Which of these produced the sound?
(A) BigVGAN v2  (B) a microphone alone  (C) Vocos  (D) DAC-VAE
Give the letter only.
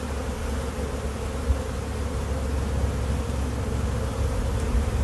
B